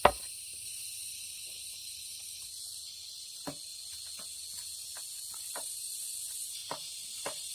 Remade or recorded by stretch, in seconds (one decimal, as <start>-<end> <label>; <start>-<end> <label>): 0.0-3.7 remade; 3.7-5.4 recorded; 5.4-7.5 remade